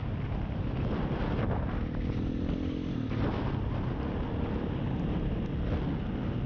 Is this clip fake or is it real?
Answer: real